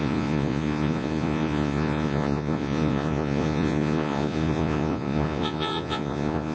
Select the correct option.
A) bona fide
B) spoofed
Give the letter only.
B